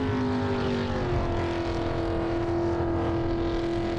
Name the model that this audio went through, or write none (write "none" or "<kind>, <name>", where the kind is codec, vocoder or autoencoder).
none